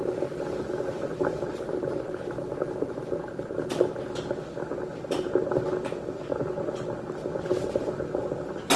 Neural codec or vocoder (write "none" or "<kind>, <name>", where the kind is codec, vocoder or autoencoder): none